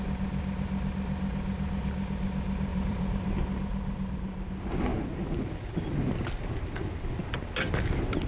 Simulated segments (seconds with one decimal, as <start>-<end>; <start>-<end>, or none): 2.7-3.3; 4.9-5.8